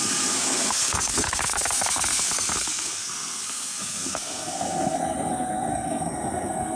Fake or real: fake